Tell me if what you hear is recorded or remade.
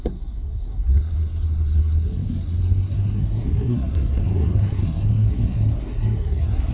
remade